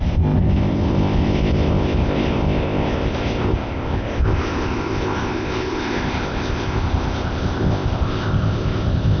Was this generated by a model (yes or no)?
yes